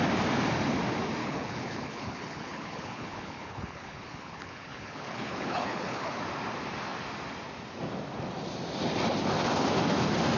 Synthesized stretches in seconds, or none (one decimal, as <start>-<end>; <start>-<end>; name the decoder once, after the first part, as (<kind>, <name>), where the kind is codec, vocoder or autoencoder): 1.2-6.2 (codec, HILCodec)